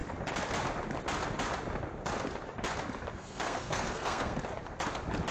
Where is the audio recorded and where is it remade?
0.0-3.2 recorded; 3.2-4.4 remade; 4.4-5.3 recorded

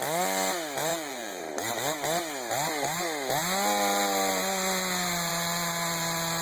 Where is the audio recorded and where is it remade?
0.0-0.9 recorded; 0.9-1.4 remade; 1.4-6.4 recorded

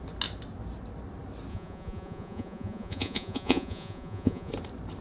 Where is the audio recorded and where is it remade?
0.0-1.5 recorded; 1.5-4.5 remade; 4.5-5.0 recorded

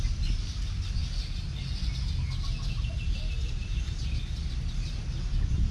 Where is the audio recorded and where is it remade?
0.0-5.7 recorded